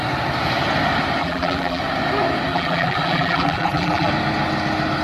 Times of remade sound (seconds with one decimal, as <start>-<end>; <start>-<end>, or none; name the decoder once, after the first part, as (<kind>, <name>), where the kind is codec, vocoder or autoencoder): 1.2-1.8 (vocoder, BigVGAN v2); 2.5-4.1